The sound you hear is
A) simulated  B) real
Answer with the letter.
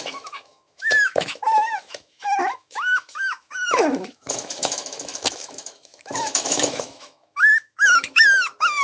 A